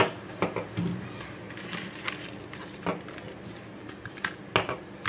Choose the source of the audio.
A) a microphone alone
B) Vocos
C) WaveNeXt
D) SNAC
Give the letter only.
A